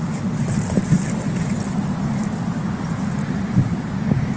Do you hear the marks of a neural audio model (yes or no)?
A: no